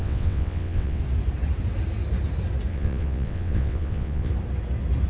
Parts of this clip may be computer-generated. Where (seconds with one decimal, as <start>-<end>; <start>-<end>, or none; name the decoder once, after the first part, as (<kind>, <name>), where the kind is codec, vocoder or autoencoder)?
0.0-1.0 (vocoder, WaveNeXt); 2.7-4.3